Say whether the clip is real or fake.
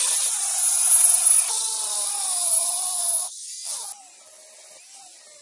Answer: real